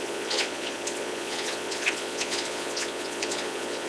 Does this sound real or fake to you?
fake